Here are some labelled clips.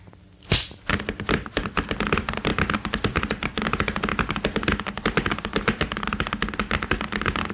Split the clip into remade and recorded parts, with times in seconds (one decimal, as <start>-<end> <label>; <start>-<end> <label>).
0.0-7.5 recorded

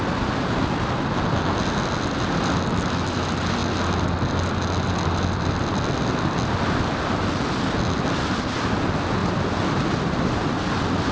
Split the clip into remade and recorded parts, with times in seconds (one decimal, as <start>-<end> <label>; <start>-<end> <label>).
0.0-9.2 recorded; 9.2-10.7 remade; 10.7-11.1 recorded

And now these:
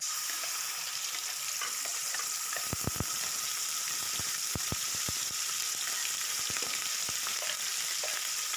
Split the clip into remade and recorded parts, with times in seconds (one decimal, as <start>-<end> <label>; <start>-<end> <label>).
0.0-1.9 recorded; 1.9-5.2 remade; 5.2-6.2 recorded; 6.2-6.8 remade; 6.8-8.6 recorded

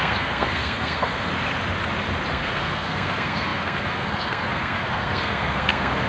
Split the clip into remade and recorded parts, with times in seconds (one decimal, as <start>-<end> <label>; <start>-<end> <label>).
0.0-1.3 remade; 1.3-2.3 recorded; 2.3-6.1 remade

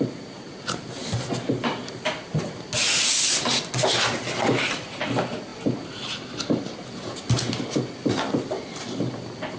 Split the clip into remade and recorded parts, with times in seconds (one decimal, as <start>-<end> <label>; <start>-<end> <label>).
0.0-9.6 recorded

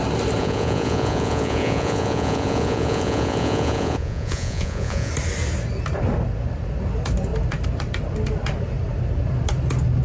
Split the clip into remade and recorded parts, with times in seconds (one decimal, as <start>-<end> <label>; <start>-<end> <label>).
0.0-0.4 recorded; 0.4-5.1 remade; 5.1-10.0 recorded

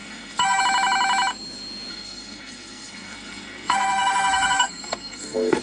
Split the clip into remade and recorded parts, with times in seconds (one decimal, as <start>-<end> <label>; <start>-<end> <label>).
0.0-0.6 remade; 0.6-1.9 recorded; 1.9-5.6 remade

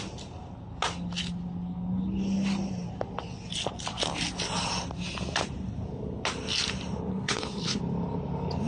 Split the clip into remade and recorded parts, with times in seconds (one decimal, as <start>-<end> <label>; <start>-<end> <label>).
0.0-7.1 recorded; 7.1-7.8 remade; 7.8-8.7 recorded